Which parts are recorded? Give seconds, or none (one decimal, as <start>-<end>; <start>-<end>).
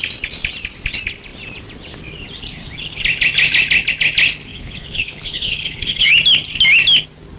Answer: 0.0-4.5; 6.1-7.4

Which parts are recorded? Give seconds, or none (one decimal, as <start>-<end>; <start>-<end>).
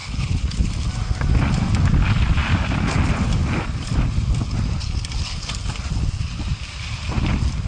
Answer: 0.7-7.7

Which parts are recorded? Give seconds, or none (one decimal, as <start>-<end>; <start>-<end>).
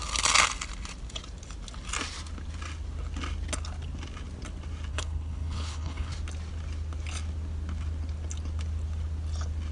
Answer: 0.0-4.9; 6.1-9.7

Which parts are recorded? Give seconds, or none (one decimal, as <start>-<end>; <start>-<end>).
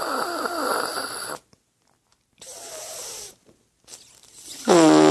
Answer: 0.0-5.1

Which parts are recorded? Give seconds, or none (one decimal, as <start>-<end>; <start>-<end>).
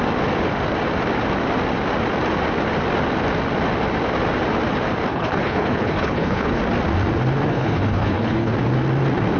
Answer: 0.0-5.1; 6.6-7.5; 8.5-9.4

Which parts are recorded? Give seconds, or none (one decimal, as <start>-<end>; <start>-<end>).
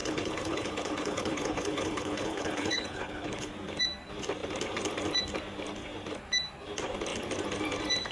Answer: 3.5-8.1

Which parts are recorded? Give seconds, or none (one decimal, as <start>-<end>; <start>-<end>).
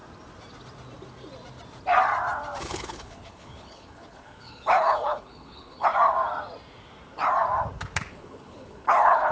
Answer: 0.0-2.6; 5.9-8.1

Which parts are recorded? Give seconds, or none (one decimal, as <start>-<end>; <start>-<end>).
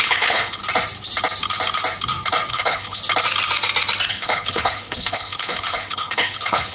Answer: 0.6-2.5; 3.0-4.1